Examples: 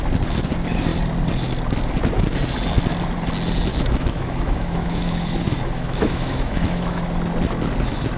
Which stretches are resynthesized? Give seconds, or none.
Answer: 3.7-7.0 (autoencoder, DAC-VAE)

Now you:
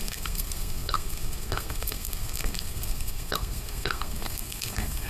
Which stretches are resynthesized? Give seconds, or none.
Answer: 0.0-5.1 (codec, SNAC)

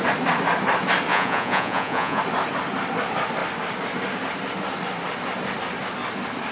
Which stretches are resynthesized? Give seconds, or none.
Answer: 1.1-2.2 (vocoder, Vocos)

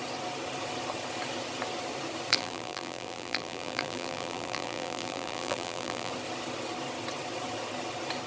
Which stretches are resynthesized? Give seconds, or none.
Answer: 2.3-6.1 (vocoder, BigVGAN v2)